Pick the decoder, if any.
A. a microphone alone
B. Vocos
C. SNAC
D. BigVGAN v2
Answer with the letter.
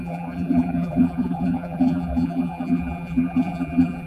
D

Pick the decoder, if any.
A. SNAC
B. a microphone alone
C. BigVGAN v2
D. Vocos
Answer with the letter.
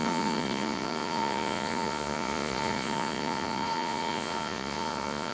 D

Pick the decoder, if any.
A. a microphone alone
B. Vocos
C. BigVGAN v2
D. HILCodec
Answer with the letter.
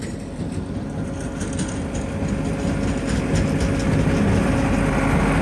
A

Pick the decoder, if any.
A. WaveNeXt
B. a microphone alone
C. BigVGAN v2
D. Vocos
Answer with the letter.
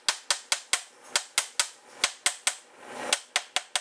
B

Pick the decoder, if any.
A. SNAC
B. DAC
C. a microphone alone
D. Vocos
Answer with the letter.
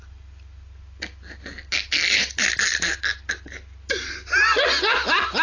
C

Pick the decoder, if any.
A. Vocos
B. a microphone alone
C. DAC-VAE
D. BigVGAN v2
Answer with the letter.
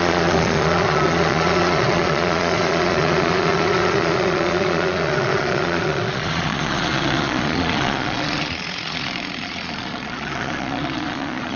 A